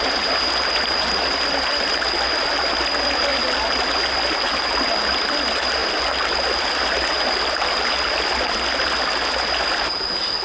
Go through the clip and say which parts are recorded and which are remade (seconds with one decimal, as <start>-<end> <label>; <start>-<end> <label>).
0.0-10.4 recorded